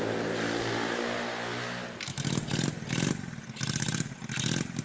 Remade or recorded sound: recorded